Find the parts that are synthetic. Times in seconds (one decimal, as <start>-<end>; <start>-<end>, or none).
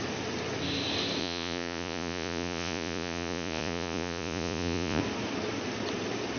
1.2-5.0